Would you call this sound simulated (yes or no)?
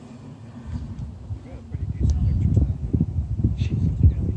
no